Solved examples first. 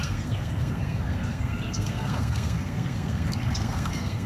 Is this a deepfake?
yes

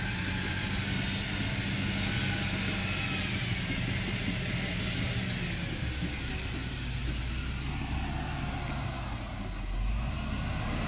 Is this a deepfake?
no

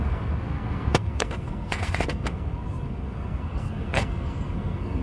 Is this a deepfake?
yes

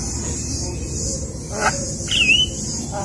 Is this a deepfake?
no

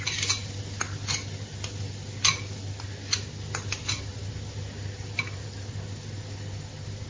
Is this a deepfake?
no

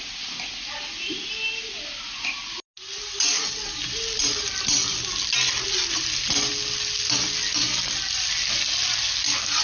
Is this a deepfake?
no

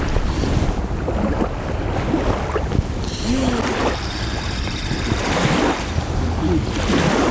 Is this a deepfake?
no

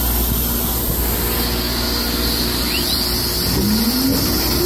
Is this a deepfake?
no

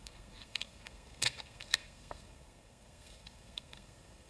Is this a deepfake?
yes